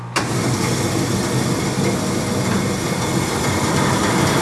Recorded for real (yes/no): yes